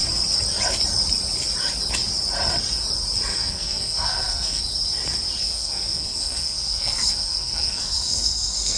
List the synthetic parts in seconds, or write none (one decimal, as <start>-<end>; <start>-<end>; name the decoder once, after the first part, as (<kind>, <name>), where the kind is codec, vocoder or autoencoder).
3.3-4.6 (codec, SNAC); 5.4-8.8